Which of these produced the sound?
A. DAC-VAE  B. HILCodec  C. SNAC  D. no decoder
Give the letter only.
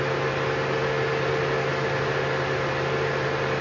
D